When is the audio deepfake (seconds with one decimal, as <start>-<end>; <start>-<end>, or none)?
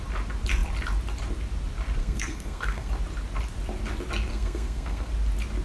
2.0-2.9; 4.3-5.1